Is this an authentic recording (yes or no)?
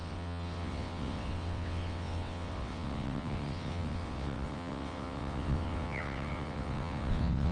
no